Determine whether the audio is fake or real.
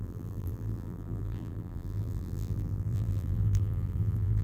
fake